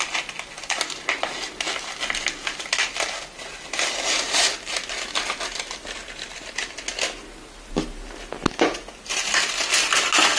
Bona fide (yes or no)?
yes